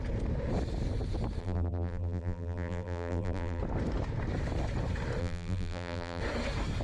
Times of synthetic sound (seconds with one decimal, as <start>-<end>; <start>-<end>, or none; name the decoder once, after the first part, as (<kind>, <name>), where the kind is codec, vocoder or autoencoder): 1.4-3.6 (vocoder, BigVGAN v2); 5.2-6.2